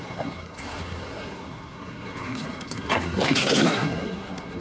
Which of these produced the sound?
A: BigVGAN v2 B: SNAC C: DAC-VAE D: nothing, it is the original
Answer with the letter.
B